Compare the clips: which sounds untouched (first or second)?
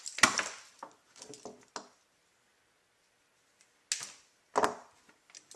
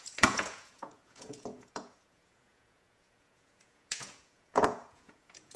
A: first